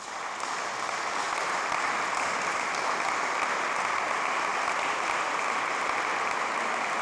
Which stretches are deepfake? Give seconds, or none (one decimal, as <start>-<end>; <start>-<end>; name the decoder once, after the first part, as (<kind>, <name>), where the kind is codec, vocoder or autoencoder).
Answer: none